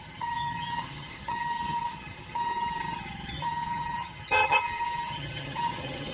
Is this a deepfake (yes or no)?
yes